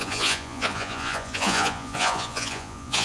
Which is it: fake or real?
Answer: fake